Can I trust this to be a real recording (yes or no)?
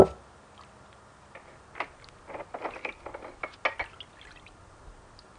yes